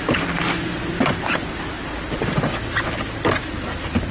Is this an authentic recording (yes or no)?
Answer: yes